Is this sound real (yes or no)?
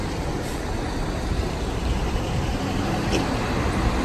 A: yes